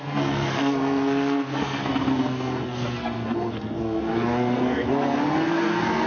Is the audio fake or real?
fake